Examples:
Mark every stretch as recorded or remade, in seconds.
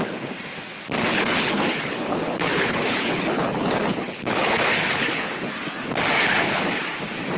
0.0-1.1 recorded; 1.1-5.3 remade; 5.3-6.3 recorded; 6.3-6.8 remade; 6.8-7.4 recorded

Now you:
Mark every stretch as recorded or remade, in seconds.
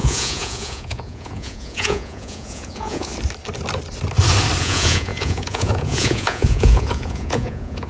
0.0-3.1 remade; 3.1-4.6 recorded; 4.6-7.9 remade